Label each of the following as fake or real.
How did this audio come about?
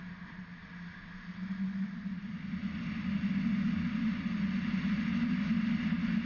real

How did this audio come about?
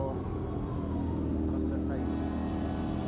real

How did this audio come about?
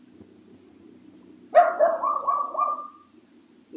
real